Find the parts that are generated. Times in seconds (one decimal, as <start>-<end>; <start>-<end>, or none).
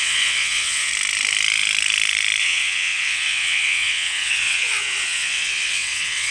0.0-0.9; 2.4-6.3